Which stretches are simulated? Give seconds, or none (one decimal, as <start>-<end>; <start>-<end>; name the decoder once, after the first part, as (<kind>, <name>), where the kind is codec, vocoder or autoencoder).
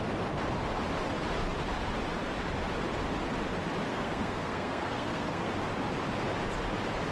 3.9-5.5 (codec, SNAC)